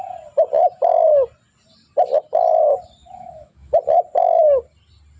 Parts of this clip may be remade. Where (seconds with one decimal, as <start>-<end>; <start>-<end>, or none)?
3.0-3.8